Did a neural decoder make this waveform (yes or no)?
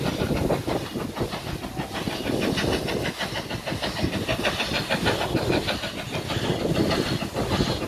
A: no